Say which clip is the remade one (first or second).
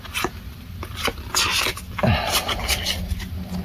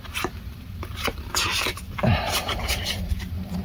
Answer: second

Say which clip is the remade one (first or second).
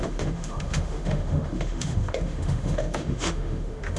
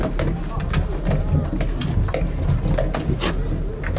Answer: first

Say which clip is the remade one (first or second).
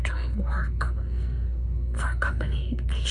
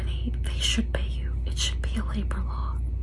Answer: first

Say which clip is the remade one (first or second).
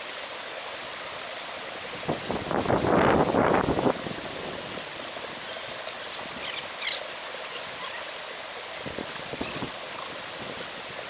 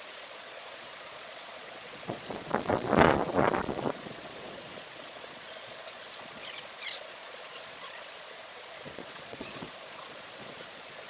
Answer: second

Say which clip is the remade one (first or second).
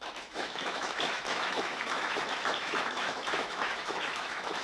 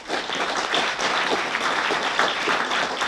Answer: first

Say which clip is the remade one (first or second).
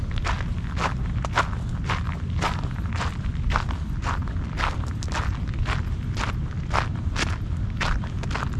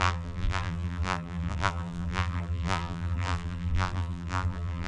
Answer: second